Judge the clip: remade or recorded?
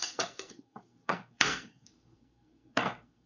remade